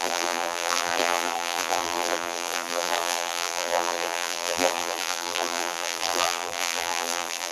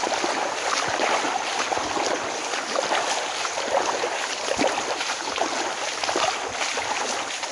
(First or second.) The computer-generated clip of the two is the first